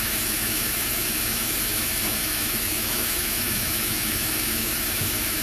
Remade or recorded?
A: remade